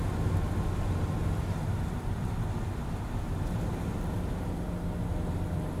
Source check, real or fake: real